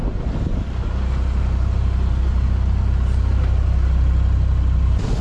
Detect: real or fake real